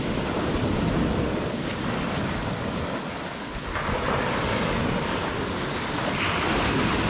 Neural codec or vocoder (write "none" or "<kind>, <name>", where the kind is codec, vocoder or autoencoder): none